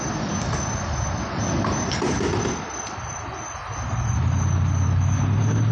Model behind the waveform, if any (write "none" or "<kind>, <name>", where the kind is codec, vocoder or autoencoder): none